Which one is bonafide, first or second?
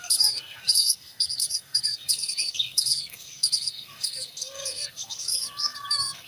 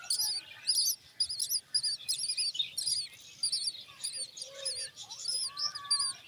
second